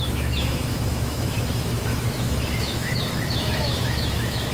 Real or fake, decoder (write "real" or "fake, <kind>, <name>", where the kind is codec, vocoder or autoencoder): fake, autoencoder, DAC-VAE